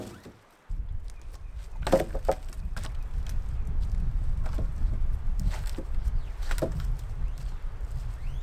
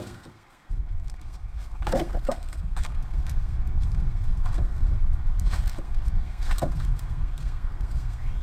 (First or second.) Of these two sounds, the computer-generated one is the second